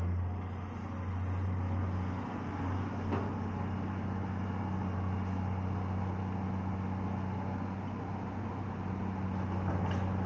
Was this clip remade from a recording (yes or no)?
no